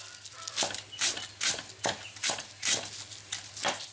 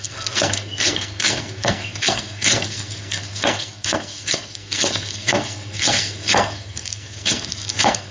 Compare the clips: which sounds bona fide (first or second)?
first